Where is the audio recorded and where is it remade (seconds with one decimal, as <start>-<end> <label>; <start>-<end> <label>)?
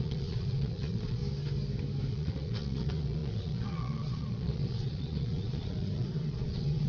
0.0-1.2 remade; 1.2-2.1 recorded; 2.1-6.9 remade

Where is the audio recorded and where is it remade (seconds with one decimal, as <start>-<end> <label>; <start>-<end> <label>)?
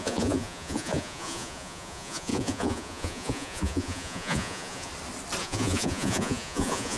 0.0-4.9 remade; 4.9-5.4 recorded; 5.4-7.0 remade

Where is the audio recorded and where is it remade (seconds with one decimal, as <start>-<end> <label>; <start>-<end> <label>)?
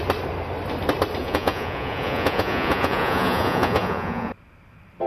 0.0-1.2 recorded; 1.2-4.3 remade; 4.3-5.1 recorded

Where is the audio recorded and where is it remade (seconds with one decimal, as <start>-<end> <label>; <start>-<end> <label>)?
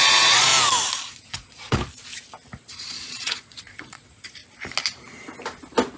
0.0-0.5 remade; 0.5-1.1 recorded; 1.1-1.8 remade; 1.8-2.7 recorded; 2.7-4.4 remade; 4.4-6.0 recorded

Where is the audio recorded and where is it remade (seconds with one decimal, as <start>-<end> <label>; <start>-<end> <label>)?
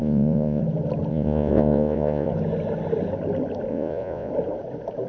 0.0-0.6 remade; 0.6-1.1 recorded; 1.1-2.3 remade; 2.3-3.7 recorded; 3.7-4.3 remade; 4.3-5.1 recorded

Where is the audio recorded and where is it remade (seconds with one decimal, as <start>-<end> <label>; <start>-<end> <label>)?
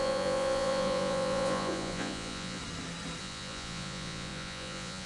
0.0-2.6 remade; 2.6-3.2 recorded; 3.2-5.1 remade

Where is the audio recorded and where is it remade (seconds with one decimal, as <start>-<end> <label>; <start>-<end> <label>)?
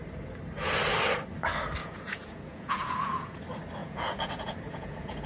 0.0-1.8 recorded; 1.8-3.4 remade; 3.4-3.8 recorded; 3.8-5.3 remade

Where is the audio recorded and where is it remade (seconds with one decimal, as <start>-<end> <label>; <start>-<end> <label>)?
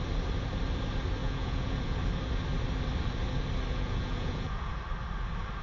0.0-1.2 recorded; 1.2-2.0 remade; 2.0-3.7 recorded; 3.7-4.7 remade; 4.7-5.6 recorded